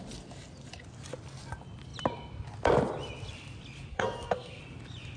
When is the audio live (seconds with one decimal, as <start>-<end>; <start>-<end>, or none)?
0.0-3.9; 4.6-5.2